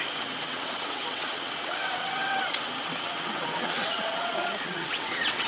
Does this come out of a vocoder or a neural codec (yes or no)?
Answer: yes